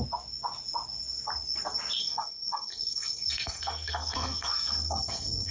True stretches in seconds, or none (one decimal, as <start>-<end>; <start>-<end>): 0.0-2.0